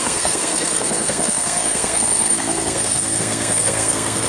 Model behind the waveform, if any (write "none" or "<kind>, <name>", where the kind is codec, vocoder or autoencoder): codec, SNAC